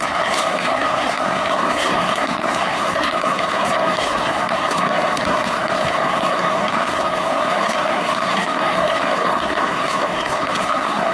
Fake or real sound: fake